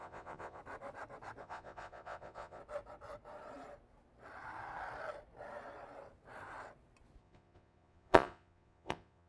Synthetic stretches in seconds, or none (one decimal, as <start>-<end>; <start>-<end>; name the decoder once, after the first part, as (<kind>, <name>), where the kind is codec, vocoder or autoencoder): 0.0-0.6 (vocoder, Vocos); 1.4-2.6; 7.2-9.3